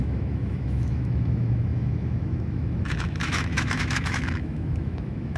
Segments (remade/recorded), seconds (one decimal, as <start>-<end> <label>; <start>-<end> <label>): 0.0-5.4 remade